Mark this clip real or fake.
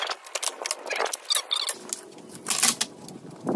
real